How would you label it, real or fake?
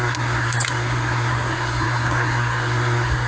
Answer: fake